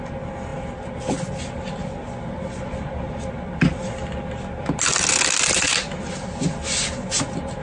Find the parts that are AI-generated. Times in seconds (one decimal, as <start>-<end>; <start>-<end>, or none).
none